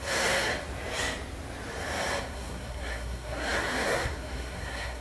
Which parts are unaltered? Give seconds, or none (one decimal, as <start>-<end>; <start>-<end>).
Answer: 0.5-2.2